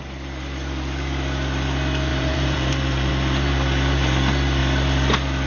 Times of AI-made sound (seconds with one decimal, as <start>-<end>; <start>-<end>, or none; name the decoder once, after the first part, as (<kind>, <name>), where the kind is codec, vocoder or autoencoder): 2.1-3.1 (vocoder, BigVGAN v2)